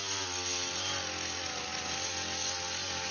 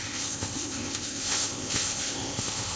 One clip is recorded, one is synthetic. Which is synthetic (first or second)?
second